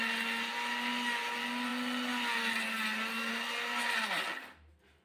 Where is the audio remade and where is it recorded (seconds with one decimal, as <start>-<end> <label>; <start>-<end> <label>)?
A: 0.0-5.0 recorded